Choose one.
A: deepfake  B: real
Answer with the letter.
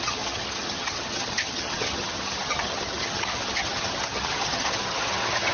A